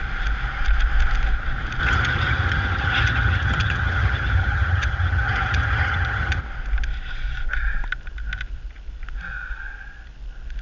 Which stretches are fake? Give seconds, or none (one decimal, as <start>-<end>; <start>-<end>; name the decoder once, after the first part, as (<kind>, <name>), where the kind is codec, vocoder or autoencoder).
1.8-6.4 (vocoder, HiFi-GAN)